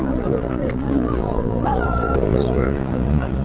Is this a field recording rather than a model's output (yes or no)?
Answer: no